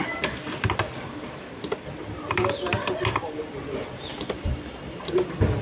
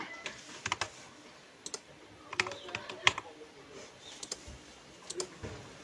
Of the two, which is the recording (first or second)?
second